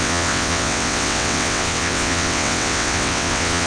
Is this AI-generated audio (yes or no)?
yes